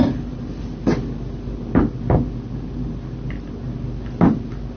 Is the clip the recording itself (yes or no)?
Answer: yes